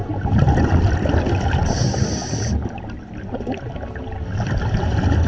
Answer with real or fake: real